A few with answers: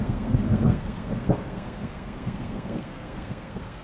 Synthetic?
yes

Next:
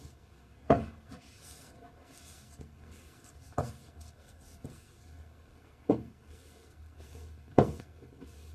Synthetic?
yes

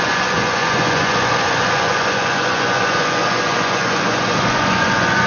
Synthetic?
yes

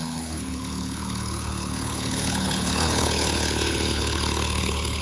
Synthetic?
yes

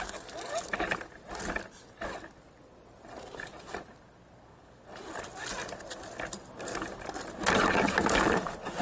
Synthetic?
no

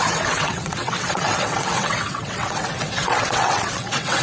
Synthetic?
yes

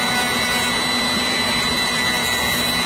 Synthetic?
no